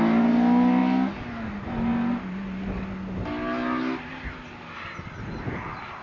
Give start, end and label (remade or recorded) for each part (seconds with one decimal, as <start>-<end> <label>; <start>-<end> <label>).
0.0-6.0 recorded